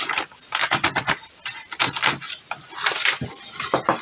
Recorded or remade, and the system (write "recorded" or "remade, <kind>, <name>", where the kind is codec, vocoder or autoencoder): recorded